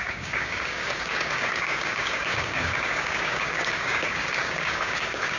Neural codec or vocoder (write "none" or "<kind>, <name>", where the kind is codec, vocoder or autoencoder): codec, DAC